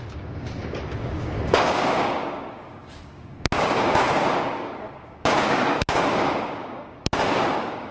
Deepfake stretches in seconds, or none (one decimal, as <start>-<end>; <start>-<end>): 0.0-7.9